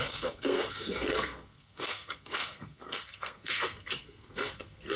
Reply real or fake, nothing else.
fake